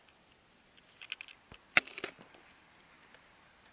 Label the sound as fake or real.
real